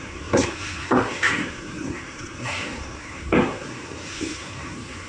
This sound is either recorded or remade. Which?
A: remade